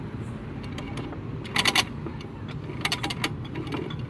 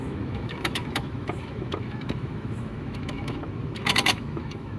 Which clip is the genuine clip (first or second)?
first